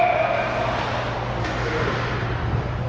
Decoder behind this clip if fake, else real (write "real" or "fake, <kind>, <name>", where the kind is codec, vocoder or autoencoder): real